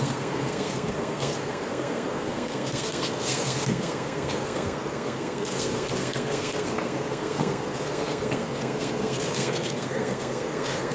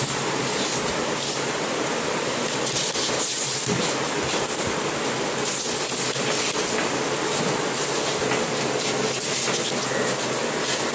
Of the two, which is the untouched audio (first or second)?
second